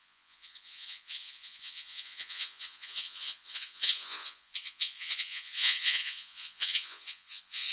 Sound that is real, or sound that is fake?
fake